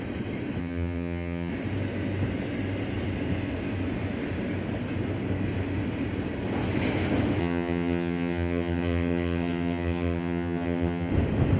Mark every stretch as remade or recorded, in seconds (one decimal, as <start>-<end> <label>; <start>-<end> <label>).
0.0-0.6 recorded; 0.6-1.5 remade; 1.5-7.4 recorded; 7.4-11.1 remade; 11.1-11.6 recorded